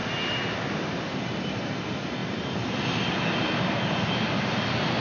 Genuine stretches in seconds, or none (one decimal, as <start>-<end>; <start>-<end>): 0.0-5.0